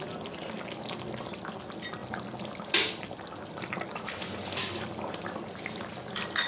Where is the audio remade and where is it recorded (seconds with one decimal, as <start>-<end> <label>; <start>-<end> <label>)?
0.0-6.5 recorded